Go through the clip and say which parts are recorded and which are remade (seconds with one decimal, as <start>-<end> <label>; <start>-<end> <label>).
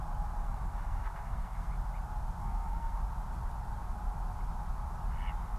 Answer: 0.0-0.4 recorded; 0.4-1.7 remade; 1.7-2.4 recorded; 2.4-3.0 remade; 3.0-5.6 recorded